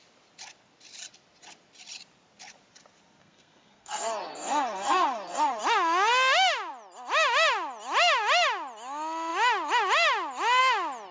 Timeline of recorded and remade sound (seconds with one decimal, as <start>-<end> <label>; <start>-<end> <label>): 0.0-3.2 recorded; 3.2-5.6 remade; 5.6-11.1 recorded